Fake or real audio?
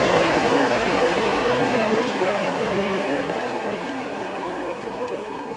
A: fake